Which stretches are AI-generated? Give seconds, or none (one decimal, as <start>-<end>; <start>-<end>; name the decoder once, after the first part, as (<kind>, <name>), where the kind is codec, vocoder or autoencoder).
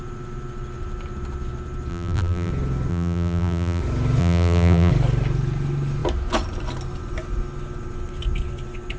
1.9-2.5 (vocoder, BigVGAN v2); 2.9-3.8; 4.2-4.9